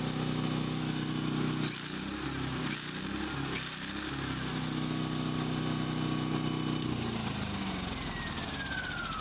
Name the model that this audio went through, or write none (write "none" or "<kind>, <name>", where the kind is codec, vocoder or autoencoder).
none